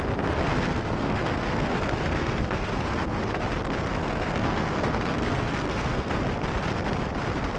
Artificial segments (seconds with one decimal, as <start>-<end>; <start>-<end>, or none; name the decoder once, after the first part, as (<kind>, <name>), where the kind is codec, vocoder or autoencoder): 0.5-3.4 (codec, SNAC); 4.0-6.2